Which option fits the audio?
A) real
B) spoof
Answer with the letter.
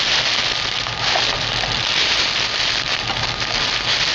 A